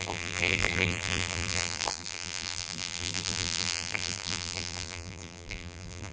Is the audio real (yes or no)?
no